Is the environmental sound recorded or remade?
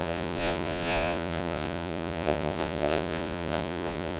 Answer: remade